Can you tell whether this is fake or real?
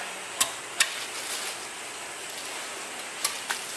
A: real